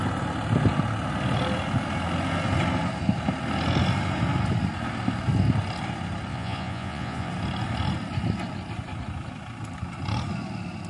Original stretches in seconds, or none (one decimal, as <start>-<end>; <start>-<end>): 0.0-6.3; 7.3-10.9